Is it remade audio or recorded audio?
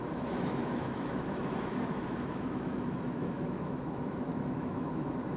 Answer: remade